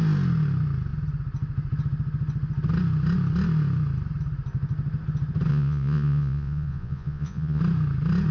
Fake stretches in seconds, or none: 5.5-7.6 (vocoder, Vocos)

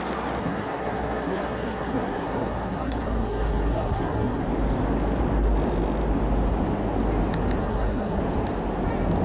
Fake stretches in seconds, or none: 0.4-4.4 (codec, SNAC); 7.6-8.2

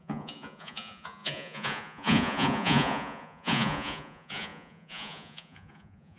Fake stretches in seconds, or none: 0.0-6.2 (vocoder, Vocos)

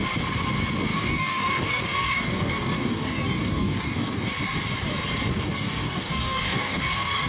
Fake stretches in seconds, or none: 0.9-4.3 (codec, DAC); 5.3-7.3

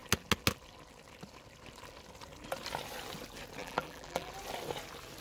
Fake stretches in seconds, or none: 3.6-4.3 (vocoder, BigVGAN v2)

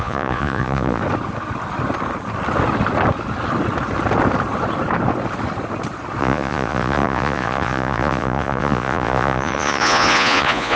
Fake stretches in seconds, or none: 0.0-1.0 (vocoder, Vocos); 6.2-10.8

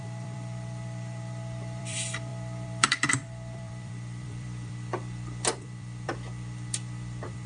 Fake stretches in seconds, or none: 0.0-7.5 (vocoder, BigVGAN v2)

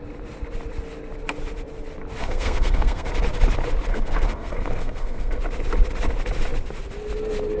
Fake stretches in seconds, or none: 2.2-3.1 (codec, SNAC); 3.9-5.4